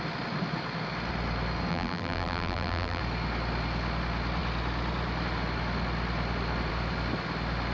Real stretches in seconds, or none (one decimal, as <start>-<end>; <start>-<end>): 0.0-1.7; 3.0-7.7